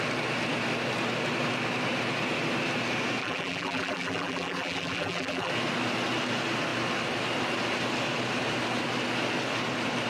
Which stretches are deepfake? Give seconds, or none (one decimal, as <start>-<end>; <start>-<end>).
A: 3.2-5.5